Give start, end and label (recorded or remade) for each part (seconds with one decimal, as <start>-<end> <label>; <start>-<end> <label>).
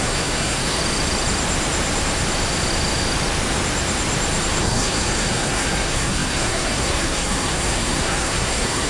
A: 0.0-0.8 remade; 0.8-4.6 recorded; 4.6-8.9 remade